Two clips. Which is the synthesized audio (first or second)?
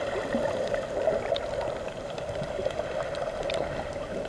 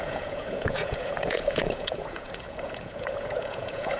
second